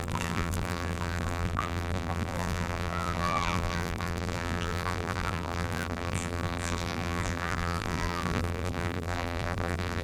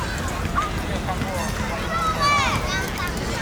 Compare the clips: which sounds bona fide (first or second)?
second